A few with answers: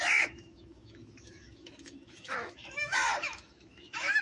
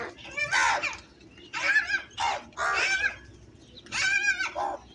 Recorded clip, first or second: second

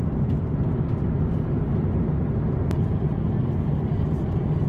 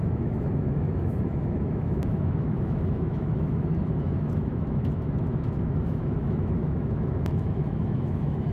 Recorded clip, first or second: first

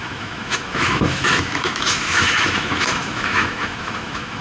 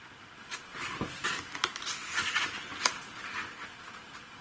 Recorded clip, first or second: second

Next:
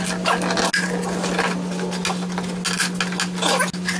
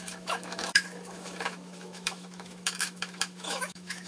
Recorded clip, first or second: first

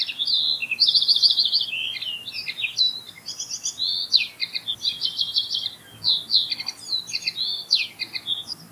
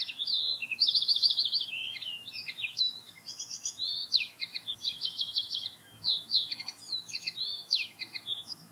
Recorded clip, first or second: first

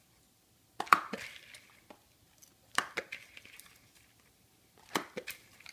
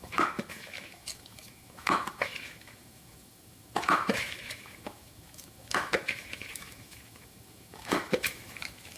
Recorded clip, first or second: first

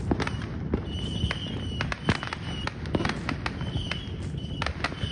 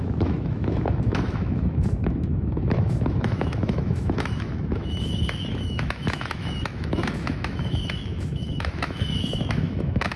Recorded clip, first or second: first